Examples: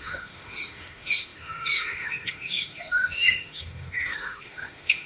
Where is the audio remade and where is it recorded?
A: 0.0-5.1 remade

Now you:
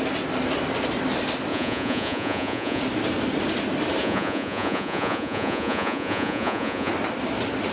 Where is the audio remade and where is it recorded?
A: 0.0-1.5 recorded; 1.5-2.8 remade; 2.8-4.0 recorded; 4.0-6.9 remade; 6.9-7.7 recorded

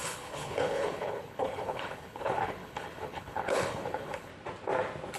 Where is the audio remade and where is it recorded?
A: 0.0-4.3 remade; 4.3-5.2 recorded

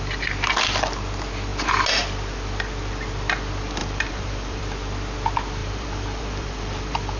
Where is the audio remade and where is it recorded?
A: 0.0-3.8 recorded; 3.8-4.6 remade; 4.6-5.6 recorded; 5.6-7.2 remade

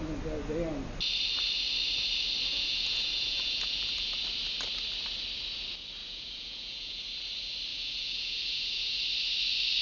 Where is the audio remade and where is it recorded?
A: 0.0-2.5 recorded; 2.5-4.1 remade; 4.1-6.0 recorded; 6.0-7.0 remade; 7.0-7.7 recorded; 7.7-9.0 remade; 9.0-9.8 recorded